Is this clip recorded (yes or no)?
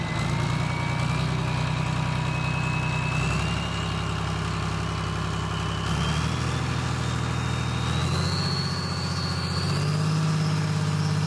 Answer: yes